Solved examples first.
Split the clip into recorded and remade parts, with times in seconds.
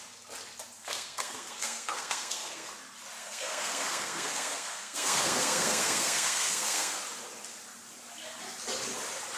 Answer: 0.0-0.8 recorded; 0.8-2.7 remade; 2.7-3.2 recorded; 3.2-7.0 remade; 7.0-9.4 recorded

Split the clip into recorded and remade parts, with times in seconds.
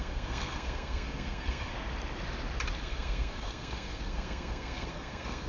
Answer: 0.0-1.7 remade; 1.7-2.8 recorded; 2.8-5.5 remade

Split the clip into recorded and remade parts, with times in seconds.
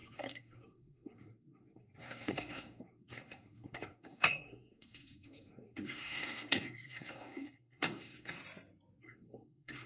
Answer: 0.0-8.4 remade; 8.4-9.0 recorded; 9.0-9.9 remade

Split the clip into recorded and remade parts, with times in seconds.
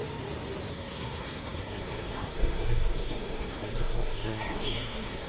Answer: 0.0-0.7 recorded; 0.7-5.3 remade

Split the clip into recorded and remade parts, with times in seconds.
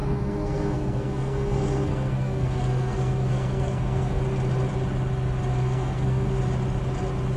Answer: 0.0-4.2 remade; 4.2-5.5 recorded; 5.5-6.4 remade; 6.4-7.4 recorded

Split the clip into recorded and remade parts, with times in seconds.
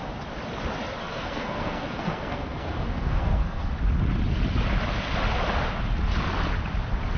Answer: 0.0-1.0 recorded; 1.0-3.7 remade; 3.7-7.2 recorded